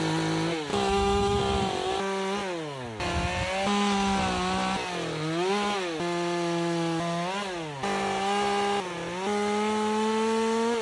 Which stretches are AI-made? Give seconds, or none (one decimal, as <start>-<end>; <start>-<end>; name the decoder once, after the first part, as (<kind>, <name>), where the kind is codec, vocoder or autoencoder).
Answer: 0.7-1.4 (autoencoder, DAC-VAE)